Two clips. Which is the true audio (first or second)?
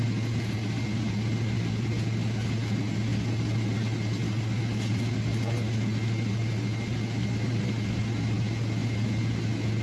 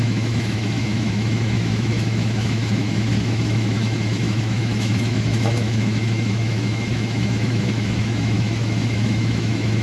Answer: first